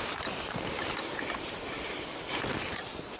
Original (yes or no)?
no